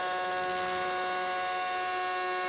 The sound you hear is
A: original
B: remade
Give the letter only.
A